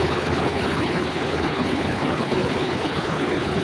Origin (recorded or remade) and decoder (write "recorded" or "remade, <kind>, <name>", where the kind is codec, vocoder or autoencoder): remade, codec, HILCodec